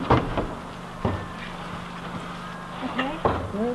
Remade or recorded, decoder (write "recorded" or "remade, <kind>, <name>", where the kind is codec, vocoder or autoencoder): recorded